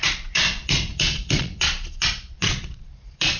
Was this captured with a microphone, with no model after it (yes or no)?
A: no